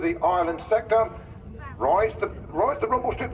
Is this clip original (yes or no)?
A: yes